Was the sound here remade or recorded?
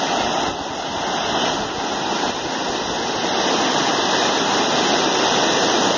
recorded